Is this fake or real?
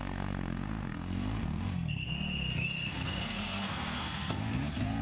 fake